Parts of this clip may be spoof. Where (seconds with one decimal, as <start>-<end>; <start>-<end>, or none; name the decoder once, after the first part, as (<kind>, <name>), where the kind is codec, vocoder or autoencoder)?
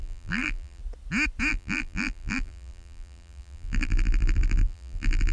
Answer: 0.0-0.8 (vocoder, BigVGAN v2); 1.5-5.3